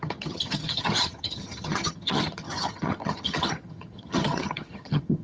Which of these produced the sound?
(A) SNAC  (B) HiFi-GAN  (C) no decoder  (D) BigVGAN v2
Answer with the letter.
B